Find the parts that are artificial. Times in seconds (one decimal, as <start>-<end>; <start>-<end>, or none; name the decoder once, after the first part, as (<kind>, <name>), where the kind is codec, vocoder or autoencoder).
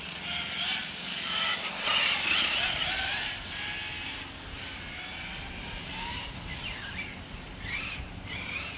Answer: none